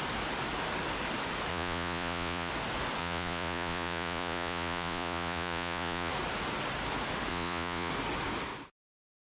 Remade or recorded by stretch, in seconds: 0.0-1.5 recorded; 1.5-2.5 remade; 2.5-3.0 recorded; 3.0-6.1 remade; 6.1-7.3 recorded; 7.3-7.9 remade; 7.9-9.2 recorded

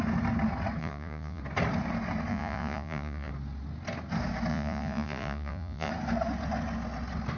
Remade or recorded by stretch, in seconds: 0.0-0.8 recorded; 0.8-1.4 remade; 1.4-2.3 recorded; 2.3-3.3 remade; 3.3-4.5 recorded; 4.5-5.9 remade; 5.9-7.4 recorded

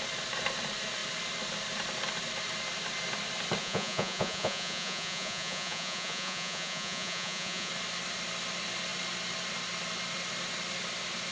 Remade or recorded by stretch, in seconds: 0.0-3.6 recorded; 3.6-7.7 remade; 7.7-11.3 recorded

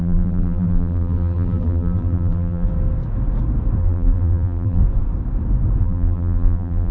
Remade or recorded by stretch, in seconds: 0.0-2.7 remade; 2.7-3.8 recorded; 3.8-4.8 remade; 4.8-5.8 recorded; 5.8-6.9 remade

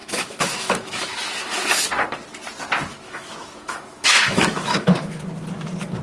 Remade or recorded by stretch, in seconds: 0.0-1.9 remade; 1.9-2.9 recorded; 2.9-5.2 remade; 5.2-6.0 recorded